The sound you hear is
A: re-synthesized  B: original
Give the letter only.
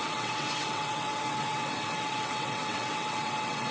A